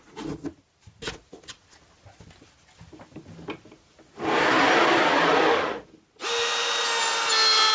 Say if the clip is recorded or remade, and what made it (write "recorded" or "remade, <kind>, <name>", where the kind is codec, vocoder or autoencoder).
recorded